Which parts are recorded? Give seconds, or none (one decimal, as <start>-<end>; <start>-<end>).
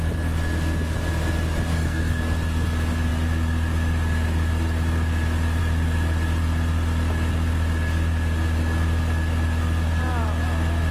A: 0.0-1.7; 2.2-10.9